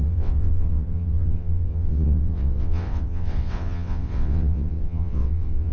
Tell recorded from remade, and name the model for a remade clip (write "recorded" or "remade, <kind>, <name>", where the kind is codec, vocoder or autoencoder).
remade, vocoder, WaveNeXt